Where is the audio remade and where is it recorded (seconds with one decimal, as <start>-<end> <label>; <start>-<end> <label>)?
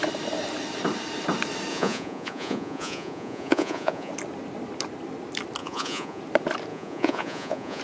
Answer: 0.0-1.7 recorded; 1.7-4.1 remade; 4.1-5.6 recorded; 5.6-6.2 remade; 6.2-6.7 recorded; 6.7-7.8 remade